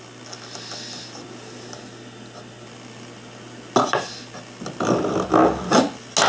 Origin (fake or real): real